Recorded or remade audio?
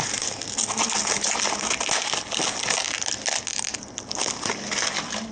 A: recorded